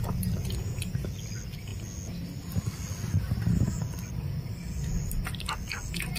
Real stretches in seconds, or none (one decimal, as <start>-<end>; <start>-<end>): 0.0-6.2